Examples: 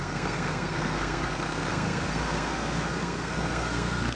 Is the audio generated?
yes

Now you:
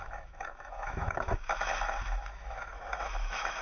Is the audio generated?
yes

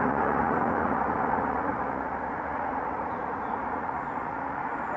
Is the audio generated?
yes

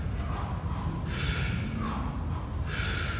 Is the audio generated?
no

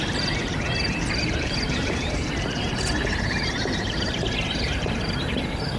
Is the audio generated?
yes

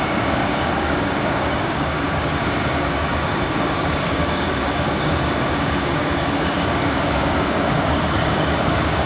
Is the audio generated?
yes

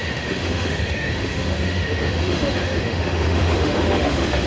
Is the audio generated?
yes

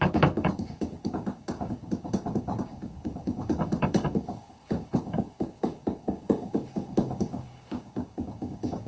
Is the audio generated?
yes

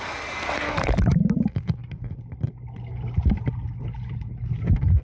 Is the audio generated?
no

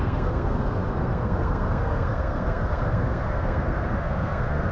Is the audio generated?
yes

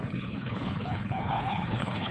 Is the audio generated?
yes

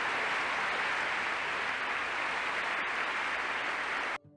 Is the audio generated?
no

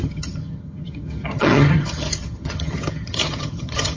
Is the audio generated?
yes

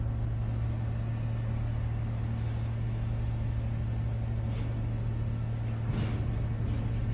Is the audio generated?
no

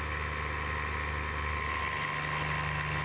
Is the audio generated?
no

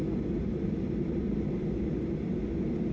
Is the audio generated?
no